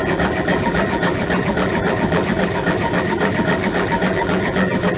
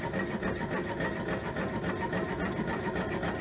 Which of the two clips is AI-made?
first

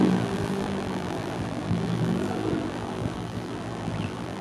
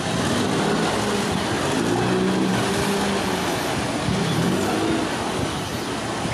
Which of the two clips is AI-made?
first